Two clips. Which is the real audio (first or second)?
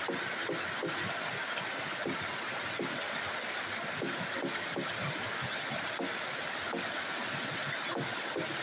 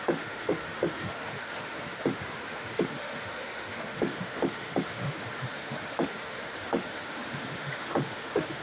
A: first